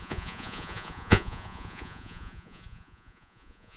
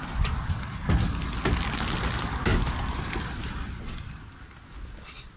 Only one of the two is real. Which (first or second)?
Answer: second